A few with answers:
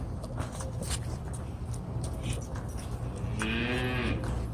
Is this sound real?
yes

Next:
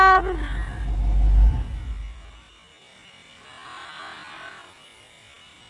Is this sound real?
yes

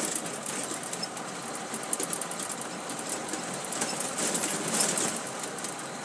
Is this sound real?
yes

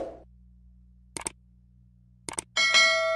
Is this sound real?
yes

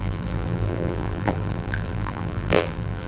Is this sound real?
no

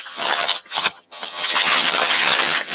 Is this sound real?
no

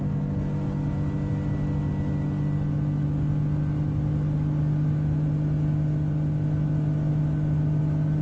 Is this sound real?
yes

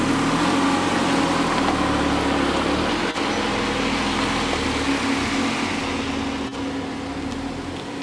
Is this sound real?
yes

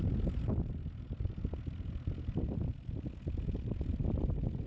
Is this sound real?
yes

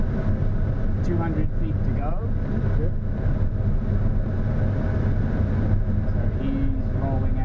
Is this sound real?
yes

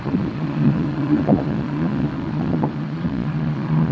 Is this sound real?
no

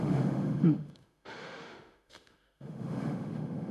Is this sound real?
no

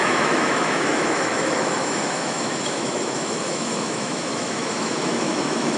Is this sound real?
no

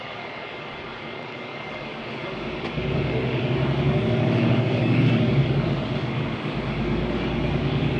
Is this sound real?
no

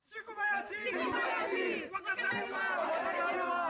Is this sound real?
yes